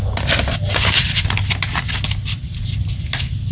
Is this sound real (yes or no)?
yes